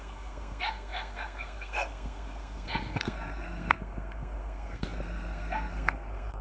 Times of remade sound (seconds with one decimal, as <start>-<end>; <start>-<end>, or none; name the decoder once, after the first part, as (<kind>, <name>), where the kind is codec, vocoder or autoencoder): 0.0-6.4 (codec, SNAC)